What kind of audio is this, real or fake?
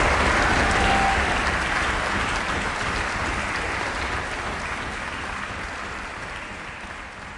real